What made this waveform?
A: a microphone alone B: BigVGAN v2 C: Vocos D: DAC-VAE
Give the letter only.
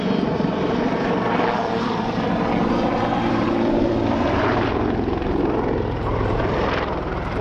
B